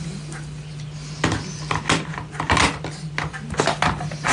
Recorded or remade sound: recorded